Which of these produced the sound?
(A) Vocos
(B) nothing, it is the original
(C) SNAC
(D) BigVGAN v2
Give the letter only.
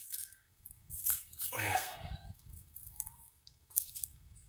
C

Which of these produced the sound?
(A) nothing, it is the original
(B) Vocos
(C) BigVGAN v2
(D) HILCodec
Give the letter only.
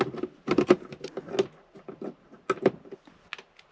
A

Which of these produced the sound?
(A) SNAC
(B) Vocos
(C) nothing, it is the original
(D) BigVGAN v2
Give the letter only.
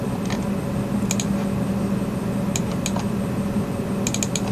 C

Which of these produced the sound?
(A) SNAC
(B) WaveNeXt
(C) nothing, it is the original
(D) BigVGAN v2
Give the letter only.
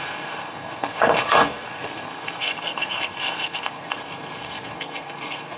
A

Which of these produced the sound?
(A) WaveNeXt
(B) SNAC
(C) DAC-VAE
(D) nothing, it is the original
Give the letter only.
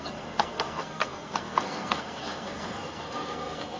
B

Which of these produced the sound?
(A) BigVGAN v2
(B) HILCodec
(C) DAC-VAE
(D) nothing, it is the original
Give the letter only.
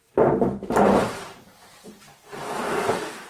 A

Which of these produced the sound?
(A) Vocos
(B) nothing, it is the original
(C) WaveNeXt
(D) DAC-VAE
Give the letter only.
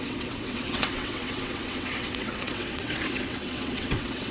C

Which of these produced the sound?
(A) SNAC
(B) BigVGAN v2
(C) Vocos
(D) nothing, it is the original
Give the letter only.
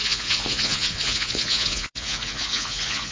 C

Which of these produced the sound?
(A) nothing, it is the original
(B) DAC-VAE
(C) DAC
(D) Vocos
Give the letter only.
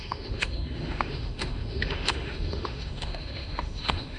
B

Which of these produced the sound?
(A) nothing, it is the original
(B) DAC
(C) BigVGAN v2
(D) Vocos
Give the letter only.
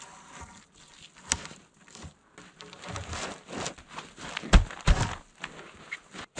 A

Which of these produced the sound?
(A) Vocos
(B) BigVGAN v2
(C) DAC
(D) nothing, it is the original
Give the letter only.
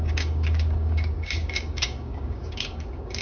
C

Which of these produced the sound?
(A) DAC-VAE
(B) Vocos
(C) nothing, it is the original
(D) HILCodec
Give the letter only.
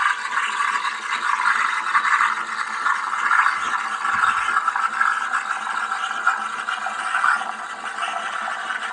C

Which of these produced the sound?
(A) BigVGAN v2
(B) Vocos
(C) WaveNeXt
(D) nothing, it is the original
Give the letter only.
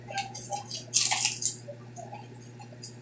A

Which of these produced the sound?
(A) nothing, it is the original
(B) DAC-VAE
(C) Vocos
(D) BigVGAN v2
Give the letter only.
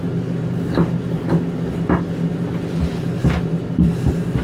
A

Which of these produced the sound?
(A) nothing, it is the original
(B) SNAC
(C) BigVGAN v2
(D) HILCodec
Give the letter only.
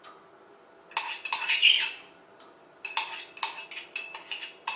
A